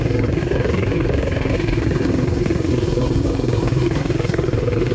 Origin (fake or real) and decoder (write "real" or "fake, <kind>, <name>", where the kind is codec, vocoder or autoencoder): fake, codec, SNAC